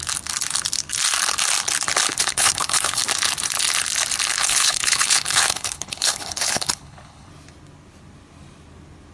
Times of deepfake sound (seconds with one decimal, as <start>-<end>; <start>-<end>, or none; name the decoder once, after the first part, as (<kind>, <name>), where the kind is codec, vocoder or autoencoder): 2.1-3.0 (codec, HILCodec); 4.3-7.3